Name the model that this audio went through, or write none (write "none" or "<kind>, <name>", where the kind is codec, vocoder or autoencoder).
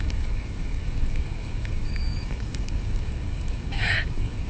codec, DAC